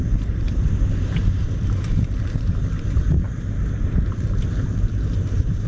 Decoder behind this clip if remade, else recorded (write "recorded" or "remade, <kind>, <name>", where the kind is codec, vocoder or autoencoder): remade, vocoder, BigVGAN v2